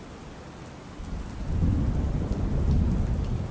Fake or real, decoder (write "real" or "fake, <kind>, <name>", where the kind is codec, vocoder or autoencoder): real